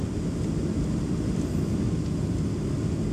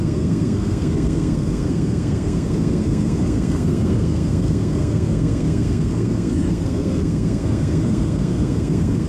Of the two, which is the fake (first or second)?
second